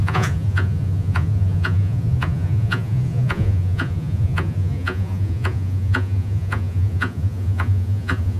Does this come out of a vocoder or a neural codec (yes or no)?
yes